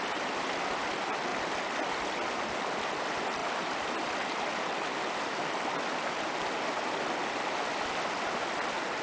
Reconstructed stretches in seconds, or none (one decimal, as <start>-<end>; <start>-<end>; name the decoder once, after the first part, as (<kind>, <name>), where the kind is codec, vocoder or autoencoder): 1.3-1.9 (vocoder, BigVGAN v2); 3.4-4.1

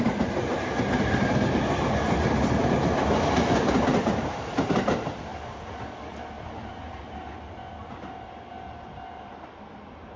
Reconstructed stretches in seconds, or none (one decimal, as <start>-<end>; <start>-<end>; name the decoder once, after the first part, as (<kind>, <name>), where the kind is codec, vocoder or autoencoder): 3.9-4.7 (vocoder, BigVGAN v2); 6.7-7.3

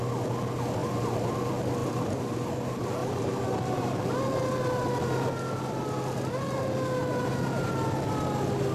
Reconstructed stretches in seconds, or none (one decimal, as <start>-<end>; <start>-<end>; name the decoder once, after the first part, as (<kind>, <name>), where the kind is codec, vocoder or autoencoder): 0.8-1.3 (vocoder, BigVGAN v2); 1.8-2.5; 3.0-4.1

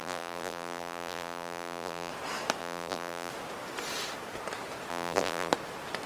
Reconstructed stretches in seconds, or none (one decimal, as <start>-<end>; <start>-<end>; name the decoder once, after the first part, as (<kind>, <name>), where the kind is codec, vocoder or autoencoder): 0.0-2.1 (vocoder, BigVGAN v2); 2.6-3.3; 4.9-5.5

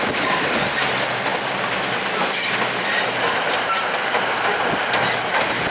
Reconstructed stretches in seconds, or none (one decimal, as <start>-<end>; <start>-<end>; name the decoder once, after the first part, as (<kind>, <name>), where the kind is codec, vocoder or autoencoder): none

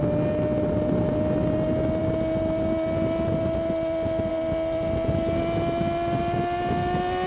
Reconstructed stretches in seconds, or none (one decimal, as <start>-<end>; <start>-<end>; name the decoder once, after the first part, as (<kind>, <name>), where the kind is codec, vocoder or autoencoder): none

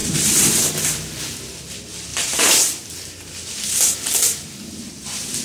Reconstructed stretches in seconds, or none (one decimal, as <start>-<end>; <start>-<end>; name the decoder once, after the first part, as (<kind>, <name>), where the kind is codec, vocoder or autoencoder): 0.0-0.5 (vocoder, BigVGAN v2); 2.1-3.1

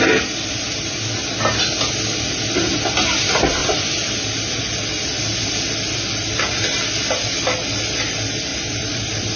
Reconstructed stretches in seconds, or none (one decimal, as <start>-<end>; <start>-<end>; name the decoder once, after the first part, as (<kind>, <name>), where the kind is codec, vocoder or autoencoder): 3.6-4.6 (vocoder, BigVGAN v2); 8.5-9.4